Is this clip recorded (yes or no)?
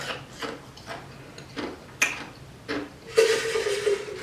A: yes